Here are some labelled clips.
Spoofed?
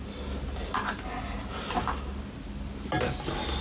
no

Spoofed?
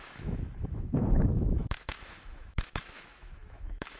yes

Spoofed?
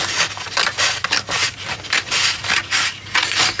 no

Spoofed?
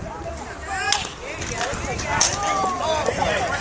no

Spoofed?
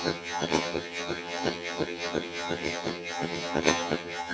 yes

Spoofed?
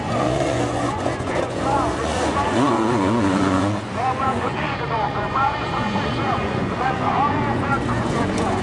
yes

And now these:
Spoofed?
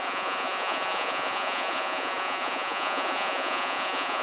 yes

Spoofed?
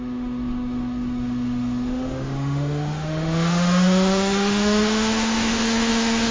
yes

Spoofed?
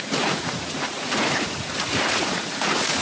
yes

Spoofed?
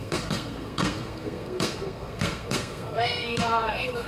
yes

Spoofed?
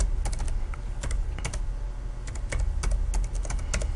no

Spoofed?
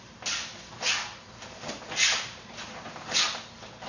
no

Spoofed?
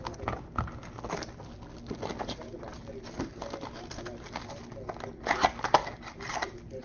no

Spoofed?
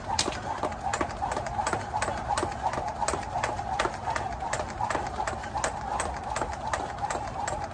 no